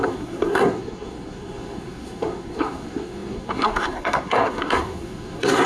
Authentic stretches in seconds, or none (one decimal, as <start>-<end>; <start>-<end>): none